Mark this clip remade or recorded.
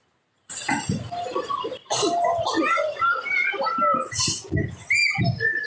recorded